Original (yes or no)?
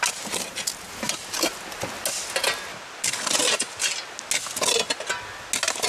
yes